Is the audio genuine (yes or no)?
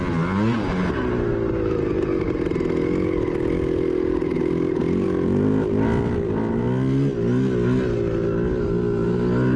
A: yes